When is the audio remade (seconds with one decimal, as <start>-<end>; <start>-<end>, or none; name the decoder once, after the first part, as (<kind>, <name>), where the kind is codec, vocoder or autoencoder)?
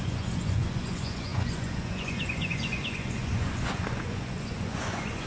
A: 0.0-5.3 (vocoder, Vocos)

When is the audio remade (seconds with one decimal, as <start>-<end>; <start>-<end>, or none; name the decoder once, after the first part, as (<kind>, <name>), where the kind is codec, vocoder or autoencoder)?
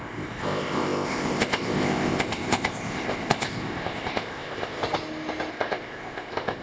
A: 0.0-4.8 (codec, ZipCodec); 5.5-6.6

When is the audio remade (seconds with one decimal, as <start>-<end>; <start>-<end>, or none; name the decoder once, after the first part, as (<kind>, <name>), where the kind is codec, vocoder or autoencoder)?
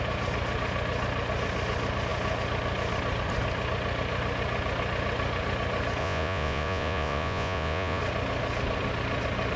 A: 6.0-8.0 (vocoder, Vocos)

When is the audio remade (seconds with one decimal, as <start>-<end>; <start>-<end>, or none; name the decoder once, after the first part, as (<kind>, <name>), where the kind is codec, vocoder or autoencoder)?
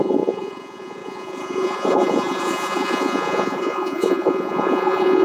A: 0.0-5.2 (vocoder, Vocos)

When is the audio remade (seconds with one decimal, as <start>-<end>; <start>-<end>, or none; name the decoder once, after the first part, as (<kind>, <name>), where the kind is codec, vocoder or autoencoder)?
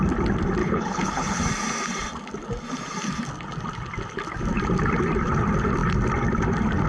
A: 0.6-1.4 (codec, HILCodec)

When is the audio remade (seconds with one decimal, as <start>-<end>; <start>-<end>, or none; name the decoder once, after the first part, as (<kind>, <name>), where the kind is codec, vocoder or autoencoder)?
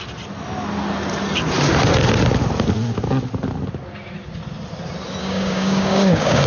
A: 5.2-6.5 (codec, DAC)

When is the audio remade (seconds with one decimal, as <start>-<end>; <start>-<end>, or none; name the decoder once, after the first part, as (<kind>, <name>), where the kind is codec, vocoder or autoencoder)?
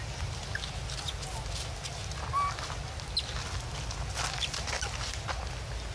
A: none